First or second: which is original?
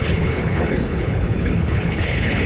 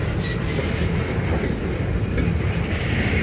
second